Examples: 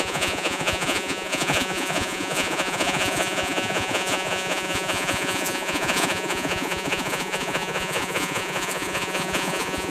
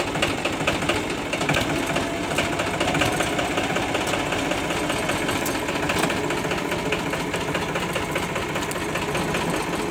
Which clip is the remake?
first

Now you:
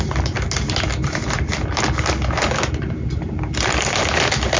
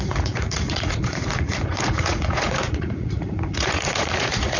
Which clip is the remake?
second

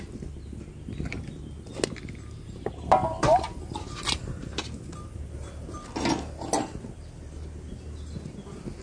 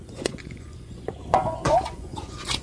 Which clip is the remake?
second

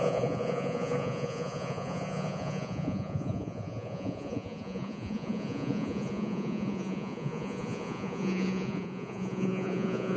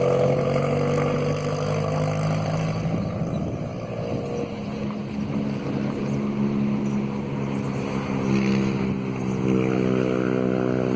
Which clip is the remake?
first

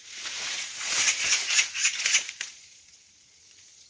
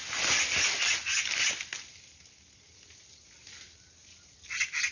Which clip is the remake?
first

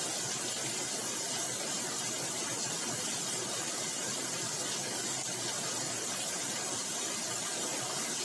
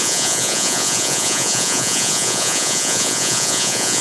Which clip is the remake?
second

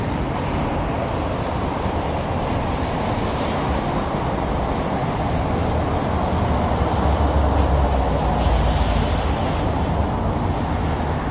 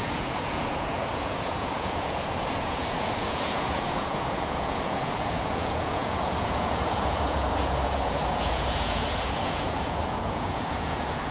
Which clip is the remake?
second